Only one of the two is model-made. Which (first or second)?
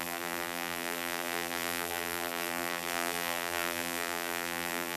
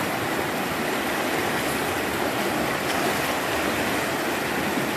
first